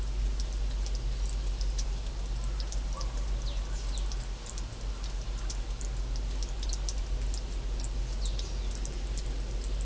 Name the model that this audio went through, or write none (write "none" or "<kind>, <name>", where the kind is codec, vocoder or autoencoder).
none